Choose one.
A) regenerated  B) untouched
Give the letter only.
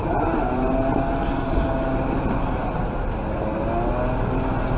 B